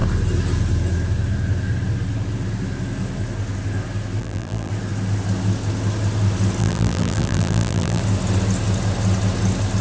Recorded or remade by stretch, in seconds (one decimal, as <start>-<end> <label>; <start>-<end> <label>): 0.0-4.2 recorded; 4.2-4.7 remade; 4.7-6.6 recorded; 6.6-8.0 remade; 8.0-9.8 recorded